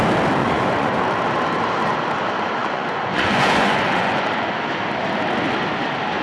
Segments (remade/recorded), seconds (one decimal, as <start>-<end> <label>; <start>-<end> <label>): 0.0-0.4 recorded; 0.4-1.0 remade; 1.0-2.6 recorded; 2.6-4.5 remade; 4.5-6.2 recorded